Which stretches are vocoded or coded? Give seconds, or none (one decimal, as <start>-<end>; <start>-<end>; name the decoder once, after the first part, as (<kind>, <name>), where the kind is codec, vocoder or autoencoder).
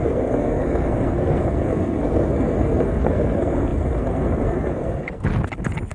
0.0-5.3 (codec, SNAC)